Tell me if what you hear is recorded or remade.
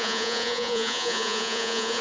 remade